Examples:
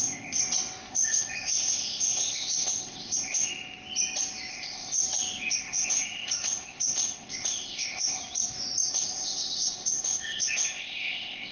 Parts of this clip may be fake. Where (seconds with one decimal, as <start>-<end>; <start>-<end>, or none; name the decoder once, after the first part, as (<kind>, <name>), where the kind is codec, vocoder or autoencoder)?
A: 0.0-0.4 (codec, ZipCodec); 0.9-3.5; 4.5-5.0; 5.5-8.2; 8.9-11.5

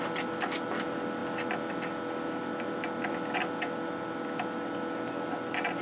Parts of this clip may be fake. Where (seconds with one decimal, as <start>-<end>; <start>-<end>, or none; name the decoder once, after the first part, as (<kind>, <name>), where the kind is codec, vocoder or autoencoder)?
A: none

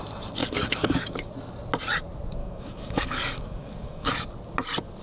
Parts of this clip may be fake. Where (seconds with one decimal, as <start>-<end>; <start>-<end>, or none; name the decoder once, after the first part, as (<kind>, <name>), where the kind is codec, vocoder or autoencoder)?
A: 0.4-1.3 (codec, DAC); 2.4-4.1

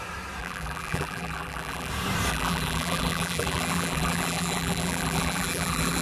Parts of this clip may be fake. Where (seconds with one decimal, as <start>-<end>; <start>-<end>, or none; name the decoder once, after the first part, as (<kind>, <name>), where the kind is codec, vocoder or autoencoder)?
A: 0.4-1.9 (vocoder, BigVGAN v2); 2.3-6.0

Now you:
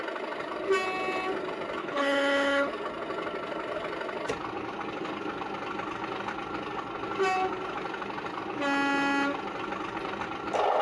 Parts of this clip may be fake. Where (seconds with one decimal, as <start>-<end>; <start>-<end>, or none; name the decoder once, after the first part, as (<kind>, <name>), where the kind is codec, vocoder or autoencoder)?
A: 1.8-2.7 (codec, HILCodec)